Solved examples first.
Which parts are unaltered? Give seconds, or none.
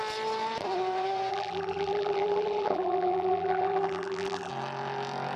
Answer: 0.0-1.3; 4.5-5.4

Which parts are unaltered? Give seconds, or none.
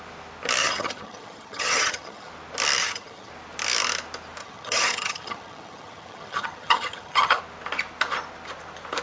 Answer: 0.0-0.6; 2.3-2.8; 3.3-4.4; 7.4-9.0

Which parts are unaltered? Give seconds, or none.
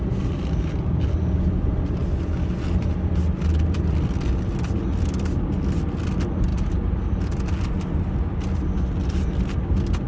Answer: 0.0-10.1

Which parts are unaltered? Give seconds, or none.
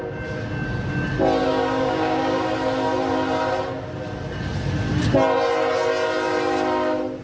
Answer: 0.0-1.4; 2.4-7.2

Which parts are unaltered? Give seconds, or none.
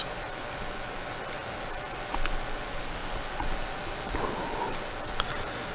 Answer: 0.0-3.0; 4.9-5.7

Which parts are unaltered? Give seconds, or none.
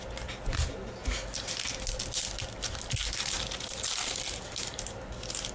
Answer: 0.0-5.5